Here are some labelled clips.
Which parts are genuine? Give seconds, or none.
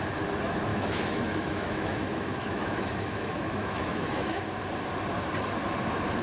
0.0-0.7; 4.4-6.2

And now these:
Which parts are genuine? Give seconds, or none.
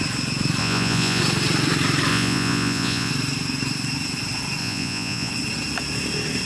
0.0-0.6; 1.2-2.1; 3.1-4.6; 5.3-6.5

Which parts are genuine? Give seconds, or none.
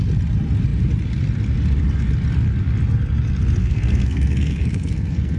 0.0-3.6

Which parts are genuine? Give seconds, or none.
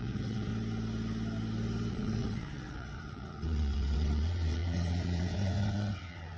0.5-1.9